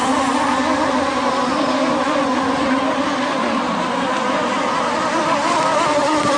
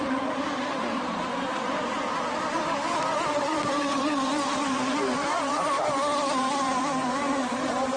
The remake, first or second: second